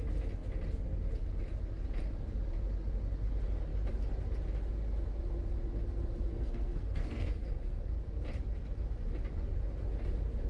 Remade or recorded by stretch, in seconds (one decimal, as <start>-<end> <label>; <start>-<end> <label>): 0.0-6.3 recorded; 6.3-7.9 remade; 7.9-10.5 recorded